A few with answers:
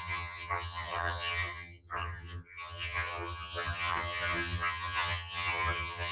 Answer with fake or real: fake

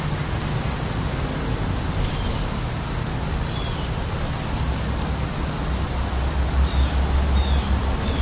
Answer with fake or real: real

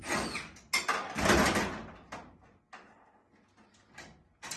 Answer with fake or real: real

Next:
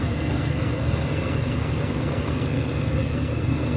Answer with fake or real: fake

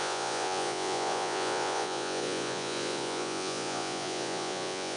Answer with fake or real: fake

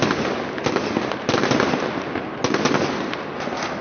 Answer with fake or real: real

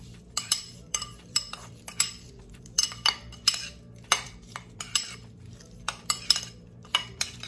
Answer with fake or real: fake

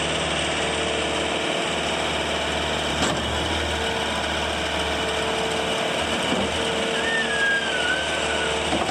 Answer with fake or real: real